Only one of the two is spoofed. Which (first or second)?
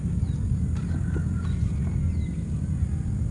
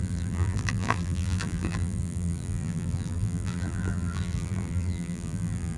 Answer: second